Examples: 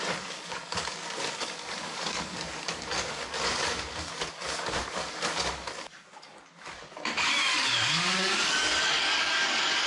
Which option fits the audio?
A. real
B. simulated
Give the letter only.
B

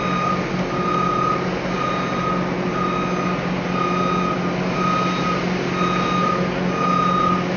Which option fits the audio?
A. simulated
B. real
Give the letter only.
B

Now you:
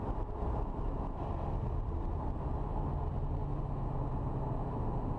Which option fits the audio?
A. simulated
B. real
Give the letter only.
B